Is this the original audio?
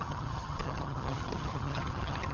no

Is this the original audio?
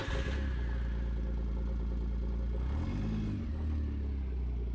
yes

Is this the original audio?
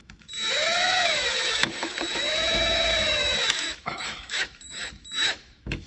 no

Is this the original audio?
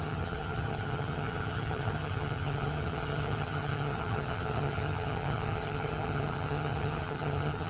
no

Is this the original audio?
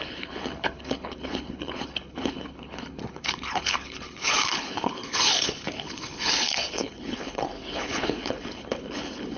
no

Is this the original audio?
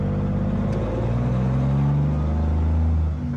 yes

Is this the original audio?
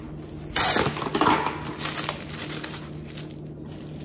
yes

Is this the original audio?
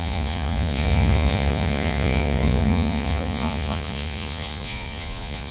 no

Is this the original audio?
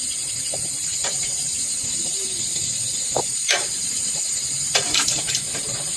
no